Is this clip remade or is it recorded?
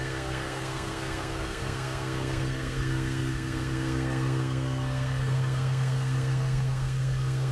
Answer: remade